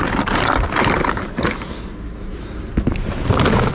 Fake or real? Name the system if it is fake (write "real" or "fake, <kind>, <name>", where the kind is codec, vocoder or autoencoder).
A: real